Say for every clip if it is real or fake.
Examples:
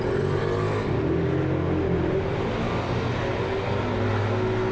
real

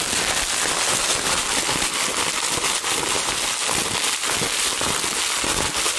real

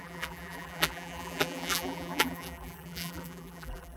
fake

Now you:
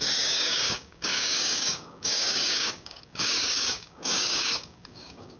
fake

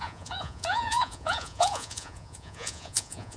fake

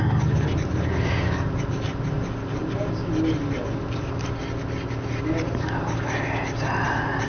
real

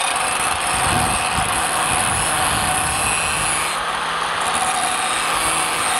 real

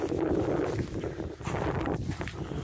real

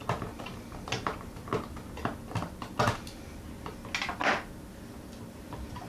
real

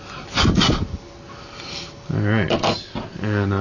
real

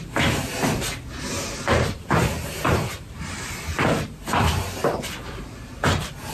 real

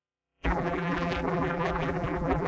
fake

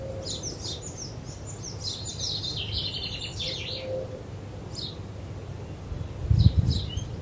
real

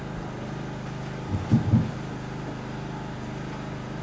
real